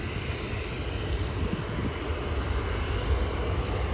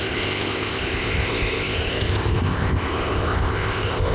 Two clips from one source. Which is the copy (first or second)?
second